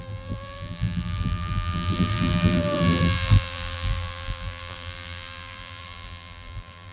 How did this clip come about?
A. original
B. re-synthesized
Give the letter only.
B